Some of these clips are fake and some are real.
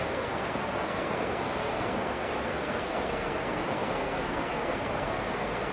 fake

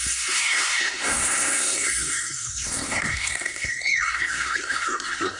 fake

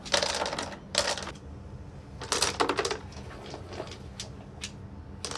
real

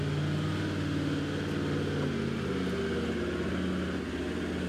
real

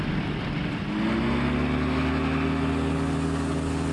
real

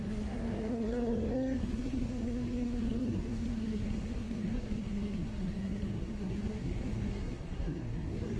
fake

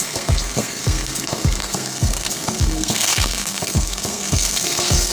fake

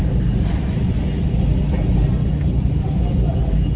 real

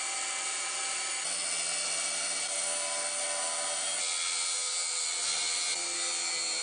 real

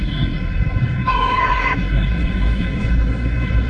fake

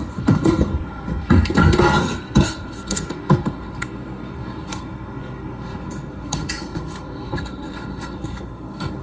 fake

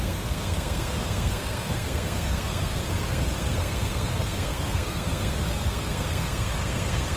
fake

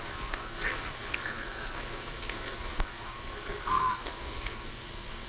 fake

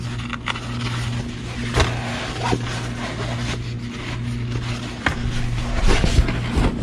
real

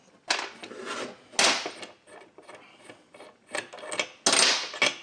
real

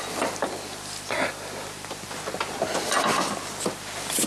real